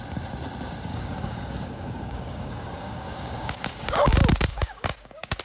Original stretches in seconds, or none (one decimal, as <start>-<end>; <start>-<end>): 0.0-0.9; 4.1-4.5